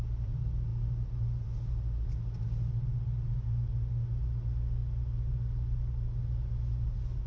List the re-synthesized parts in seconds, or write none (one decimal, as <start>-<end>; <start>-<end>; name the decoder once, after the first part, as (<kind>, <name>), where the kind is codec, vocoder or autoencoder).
none